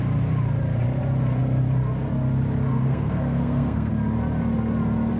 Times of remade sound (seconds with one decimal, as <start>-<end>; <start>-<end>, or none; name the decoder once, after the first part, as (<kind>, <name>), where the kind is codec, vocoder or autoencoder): 2.7-3.9 (codec, SNAC)